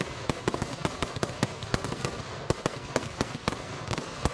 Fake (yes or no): yes